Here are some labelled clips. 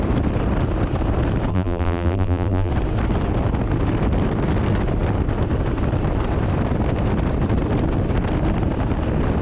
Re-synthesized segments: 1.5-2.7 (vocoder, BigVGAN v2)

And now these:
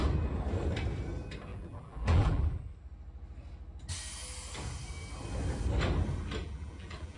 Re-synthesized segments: 1.5-2.6 (vocoder, BigVGAN v2); 6.4-7.2